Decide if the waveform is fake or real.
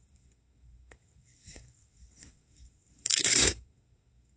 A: fake